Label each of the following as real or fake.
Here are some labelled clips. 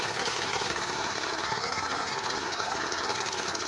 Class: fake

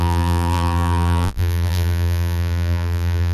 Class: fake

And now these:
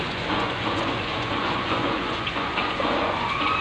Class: fake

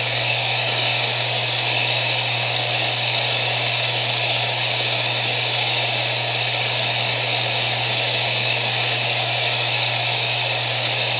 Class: fake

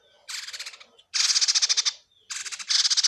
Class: real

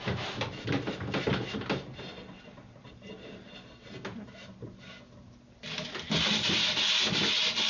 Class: real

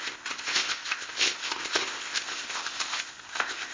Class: fake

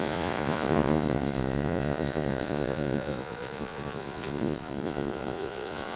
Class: fake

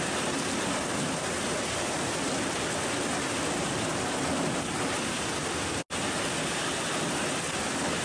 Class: real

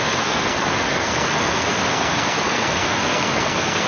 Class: fake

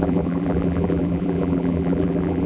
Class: fake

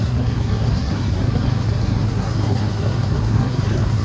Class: fake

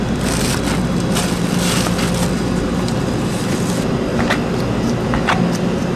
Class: real